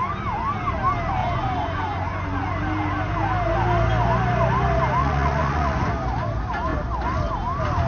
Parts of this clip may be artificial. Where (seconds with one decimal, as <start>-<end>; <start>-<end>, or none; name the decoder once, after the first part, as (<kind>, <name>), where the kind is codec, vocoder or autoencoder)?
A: 1.2-2.5 (vocoder, Vocos); 5.0-5.9